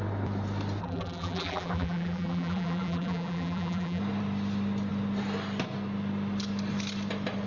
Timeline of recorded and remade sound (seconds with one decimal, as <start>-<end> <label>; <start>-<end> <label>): 0.0-0.8 recorded; 0.8-4.0 remade; 4.0-7.5 recorded